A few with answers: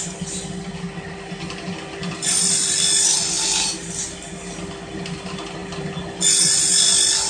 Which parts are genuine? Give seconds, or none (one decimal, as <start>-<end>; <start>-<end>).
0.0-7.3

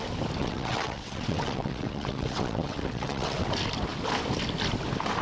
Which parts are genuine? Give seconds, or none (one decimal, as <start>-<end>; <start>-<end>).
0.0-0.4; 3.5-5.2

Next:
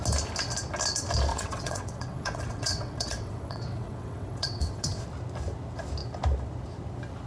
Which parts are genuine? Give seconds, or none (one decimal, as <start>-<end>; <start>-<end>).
0.0-1.3; 5.0-7.3